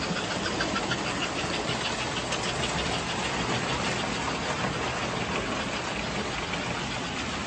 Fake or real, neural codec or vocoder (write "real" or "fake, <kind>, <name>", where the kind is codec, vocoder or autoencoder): real